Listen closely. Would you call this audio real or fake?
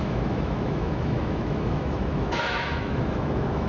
fake